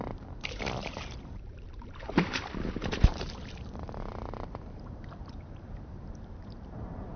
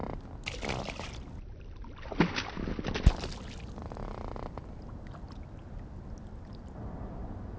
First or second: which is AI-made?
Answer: first